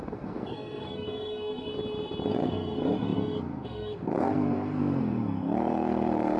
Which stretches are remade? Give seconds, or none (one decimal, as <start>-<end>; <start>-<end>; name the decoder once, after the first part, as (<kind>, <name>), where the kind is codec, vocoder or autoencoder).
0.0-1.7 (codec, SNAC); 2.3-6.4